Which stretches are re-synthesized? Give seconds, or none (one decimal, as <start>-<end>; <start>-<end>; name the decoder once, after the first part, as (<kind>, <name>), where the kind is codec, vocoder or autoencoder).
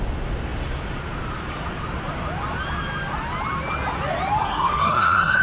4.4-5.4 (codec, SNAC)